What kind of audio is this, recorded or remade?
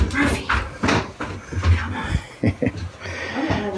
recorded